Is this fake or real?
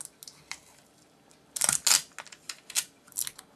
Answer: real